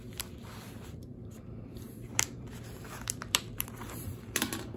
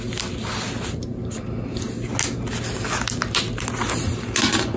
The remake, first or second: first